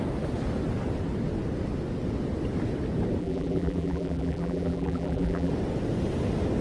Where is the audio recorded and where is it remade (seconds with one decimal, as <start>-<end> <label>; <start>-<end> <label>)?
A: 0.0-3.2 recorded; 3.2-5.5 remade; 5.5-6.6 recorded